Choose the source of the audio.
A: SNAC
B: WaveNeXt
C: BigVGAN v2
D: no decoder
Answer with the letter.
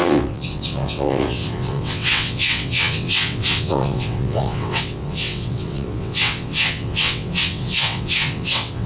B